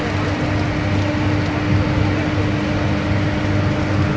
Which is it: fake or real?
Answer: real